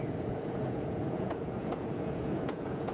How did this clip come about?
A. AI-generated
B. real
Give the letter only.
A